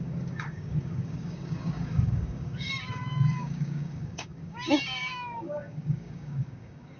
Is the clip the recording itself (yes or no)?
no